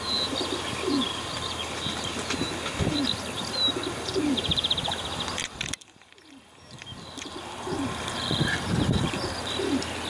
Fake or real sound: real